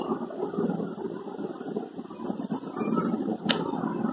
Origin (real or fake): real